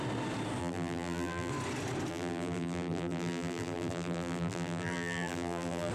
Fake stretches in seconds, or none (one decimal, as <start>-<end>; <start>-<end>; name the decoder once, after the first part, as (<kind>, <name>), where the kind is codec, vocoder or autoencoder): 0.6-1.5 (vocoder, BigVGAN v2); 2.1-5.9